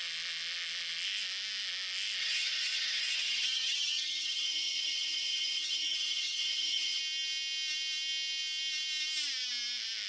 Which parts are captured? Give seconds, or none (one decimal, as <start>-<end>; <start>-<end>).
0.0-2.2; 7.0-10.1